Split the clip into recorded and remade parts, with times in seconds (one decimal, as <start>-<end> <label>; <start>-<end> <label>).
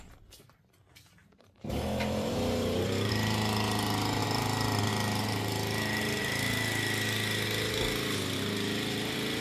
0.0-1.2 recorded; 1.2-3.1 remade; 3.1-9.4 recorded